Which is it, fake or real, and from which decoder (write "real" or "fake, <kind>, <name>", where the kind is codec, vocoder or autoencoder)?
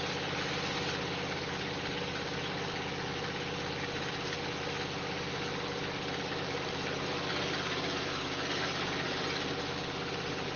real